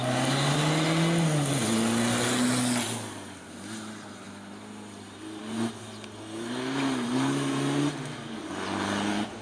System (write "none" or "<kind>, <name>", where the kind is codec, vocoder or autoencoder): none